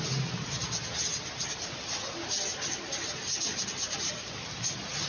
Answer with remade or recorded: recorded